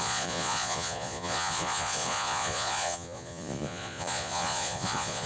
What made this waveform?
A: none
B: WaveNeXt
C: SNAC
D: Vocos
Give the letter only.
D